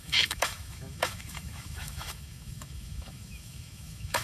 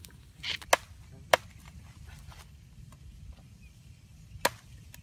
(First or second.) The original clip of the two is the second